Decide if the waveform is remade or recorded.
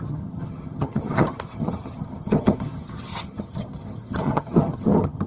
remade